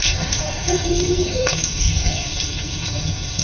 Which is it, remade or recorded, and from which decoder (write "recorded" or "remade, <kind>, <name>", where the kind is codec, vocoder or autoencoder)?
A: remade, codec, SNAC